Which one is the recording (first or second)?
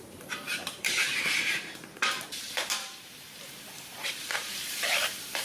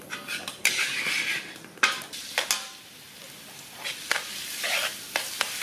second